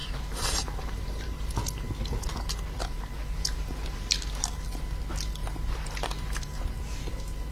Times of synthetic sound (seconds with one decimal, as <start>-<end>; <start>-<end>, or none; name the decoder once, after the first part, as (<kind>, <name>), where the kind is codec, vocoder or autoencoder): 0.0-1.5 (vocoder, BigVGAN v2); 2.8-4.8; 5.4-6.8